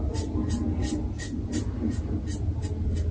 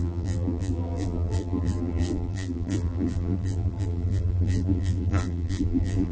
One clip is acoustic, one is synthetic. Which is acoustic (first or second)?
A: first